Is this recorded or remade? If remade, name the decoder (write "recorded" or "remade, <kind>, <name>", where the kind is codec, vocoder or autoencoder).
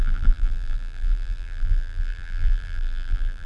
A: remade, vocoder, BigVGAN v2